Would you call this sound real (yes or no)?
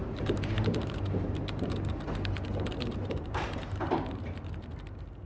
yes